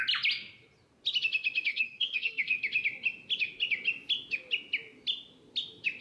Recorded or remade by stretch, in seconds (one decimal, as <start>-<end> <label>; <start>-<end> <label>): 0.0-1.7 recorded; 1.7-2.6 remade; 2.6-6.0 recorded